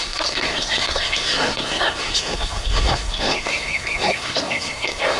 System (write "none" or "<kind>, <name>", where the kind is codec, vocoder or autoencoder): codec, SNAC